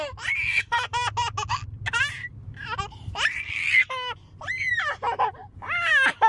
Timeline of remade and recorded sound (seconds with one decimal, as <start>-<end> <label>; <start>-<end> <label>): 0.0-6.3 recorded